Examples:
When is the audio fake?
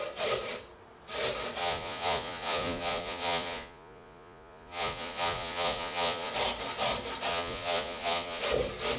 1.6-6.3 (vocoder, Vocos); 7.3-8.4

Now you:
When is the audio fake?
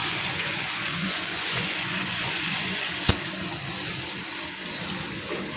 0.0-2.9 (vocoder, Vocos)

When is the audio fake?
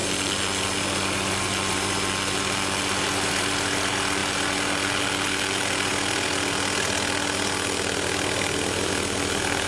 none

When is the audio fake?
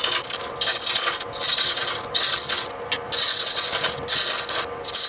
none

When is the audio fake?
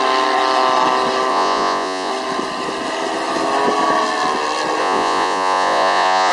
1.3-2.1 (vocoder, Vocos); 4.8-6.3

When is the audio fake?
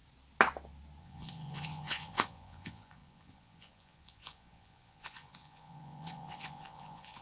1.0-7.2 (vocoder, Vocos)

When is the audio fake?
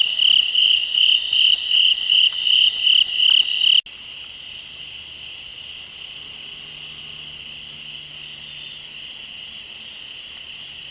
0.6-2.7 (vocoder, Vocos)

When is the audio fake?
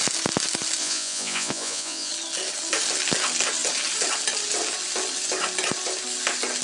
0.8-2.1 (vocoder, Vocos)